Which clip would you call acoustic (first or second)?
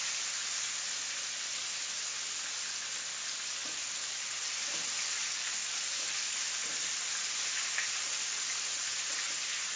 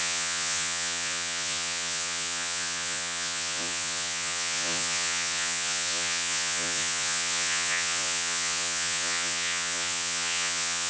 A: first